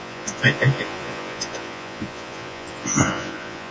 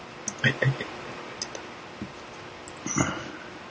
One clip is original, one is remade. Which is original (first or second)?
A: second